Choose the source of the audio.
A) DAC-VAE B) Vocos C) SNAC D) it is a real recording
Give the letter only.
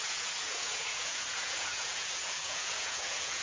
B